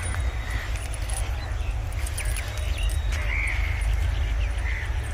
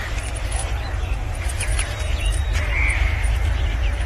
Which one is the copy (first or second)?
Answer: second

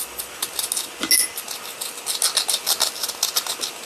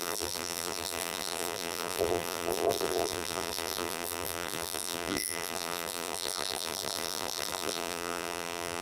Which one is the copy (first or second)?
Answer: second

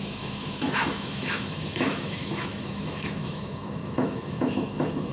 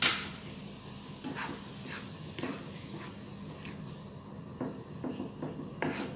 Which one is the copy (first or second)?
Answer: first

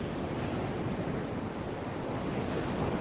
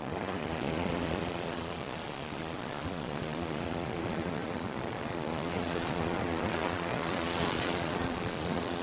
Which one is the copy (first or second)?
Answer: second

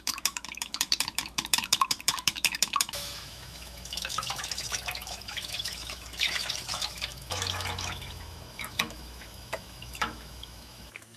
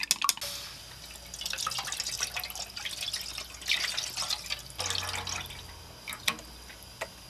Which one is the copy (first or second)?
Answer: first